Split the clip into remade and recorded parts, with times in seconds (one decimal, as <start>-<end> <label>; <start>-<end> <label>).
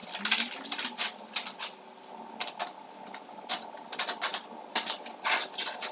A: 0.0-5.9 recorded